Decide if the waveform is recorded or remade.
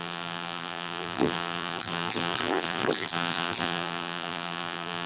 remade